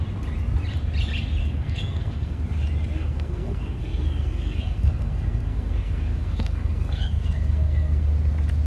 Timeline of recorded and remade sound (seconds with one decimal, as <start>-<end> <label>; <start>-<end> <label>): 0.0-1.4 recorded; 1.4-2.4 remade; 2.4-3.0 recorded; 3.0-8.1 remade; 8.1-8.7 recorded